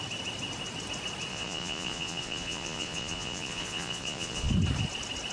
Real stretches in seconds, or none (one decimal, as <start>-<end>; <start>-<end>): 0.0-1.3; 4.5-5.3